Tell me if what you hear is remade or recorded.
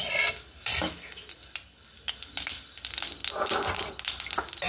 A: recorded